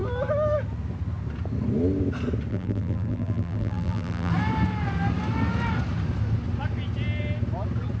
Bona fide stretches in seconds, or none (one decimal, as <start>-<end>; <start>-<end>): 0.0-2.5; 4.3-8.0